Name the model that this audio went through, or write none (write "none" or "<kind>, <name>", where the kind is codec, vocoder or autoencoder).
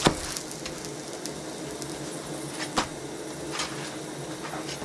none